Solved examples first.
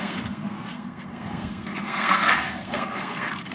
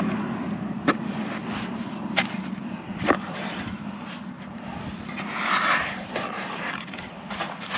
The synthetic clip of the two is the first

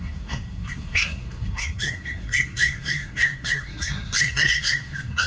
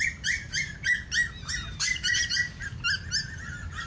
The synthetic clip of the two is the first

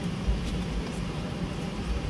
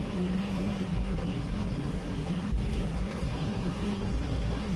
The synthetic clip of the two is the second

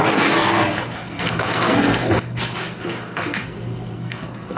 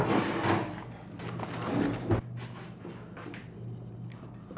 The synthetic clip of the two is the first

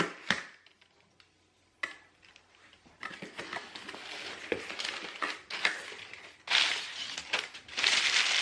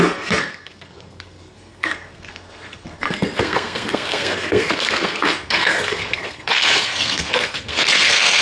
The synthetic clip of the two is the second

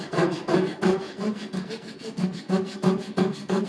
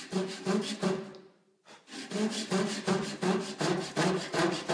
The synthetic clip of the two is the first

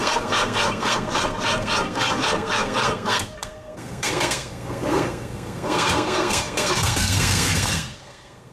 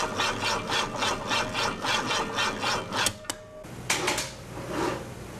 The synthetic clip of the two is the first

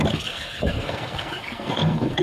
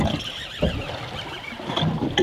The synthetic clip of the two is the first